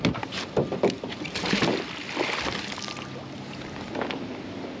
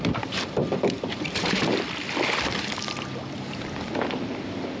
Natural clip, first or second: first